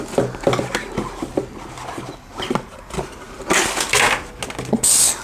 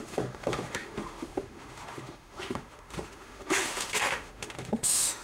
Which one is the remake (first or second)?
second